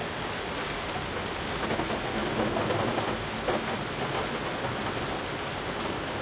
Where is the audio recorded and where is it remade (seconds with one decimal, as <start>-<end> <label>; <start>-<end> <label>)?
0.0-6.2 recorded